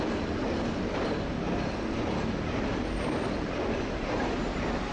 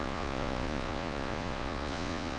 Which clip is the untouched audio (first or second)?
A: first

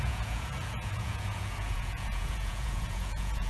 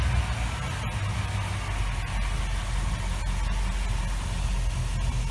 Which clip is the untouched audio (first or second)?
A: second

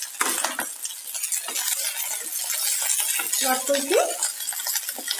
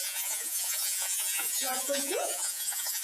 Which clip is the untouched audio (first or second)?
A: first